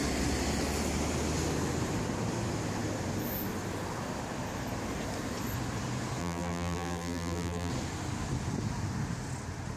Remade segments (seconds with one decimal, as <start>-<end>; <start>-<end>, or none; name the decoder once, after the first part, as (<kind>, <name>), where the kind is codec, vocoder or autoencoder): 6.2-7.7 (vocoder, BigVGAN v2)